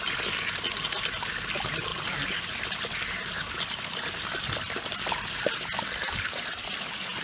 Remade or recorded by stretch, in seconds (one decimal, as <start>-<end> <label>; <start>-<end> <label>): 0.0-7.2 recorded